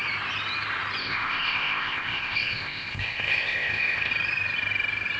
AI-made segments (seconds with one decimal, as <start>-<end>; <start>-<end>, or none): 1.0-4.1